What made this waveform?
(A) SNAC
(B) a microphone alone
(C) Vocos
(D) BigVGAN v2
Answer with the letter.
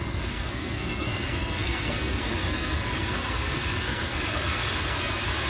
A